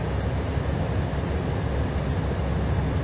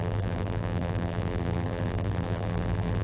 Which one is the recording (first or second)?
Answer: first